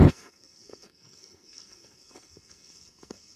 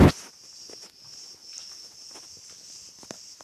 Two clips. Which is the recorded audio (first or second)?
second